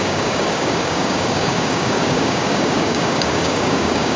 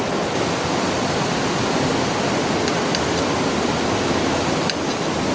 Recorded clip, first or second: second